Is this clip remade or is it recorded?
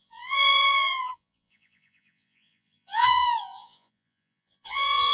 remade